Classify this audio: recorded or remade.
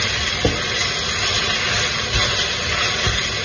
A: recorded